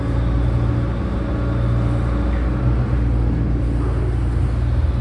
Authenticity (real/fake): real